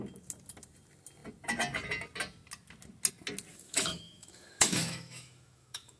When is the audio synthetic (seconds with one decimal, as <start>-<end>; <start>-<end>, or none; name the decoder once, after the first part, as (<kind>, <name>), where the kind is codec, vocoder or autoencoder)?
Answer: 3.5-6.0 (autoencoder, DAC-VAE)